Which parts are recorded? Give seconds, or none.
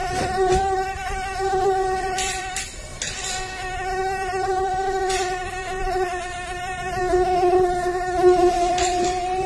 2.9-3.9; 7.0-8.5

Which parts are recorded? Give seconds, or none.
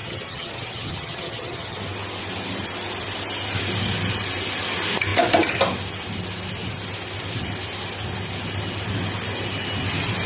1.8-10.3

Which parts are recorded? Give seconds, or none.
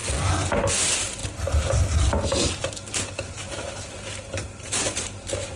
0.0-0.7; 1.2-4.6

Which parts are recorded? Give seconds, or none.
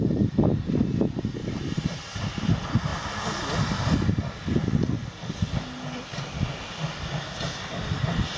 0.0-1.4; 2.3-8.4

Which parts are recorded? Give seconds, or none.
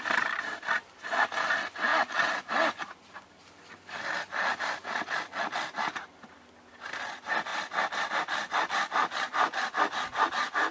1.9-2.5; 7.5-8.1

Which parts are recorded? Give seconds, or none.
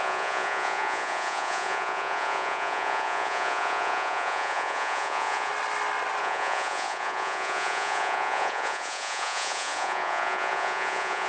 5.5-6.2